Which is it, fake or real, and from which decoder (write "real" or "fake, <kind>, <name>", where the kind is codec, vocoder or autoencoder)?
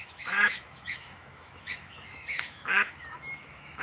fake, autoencoder, DAC-VAE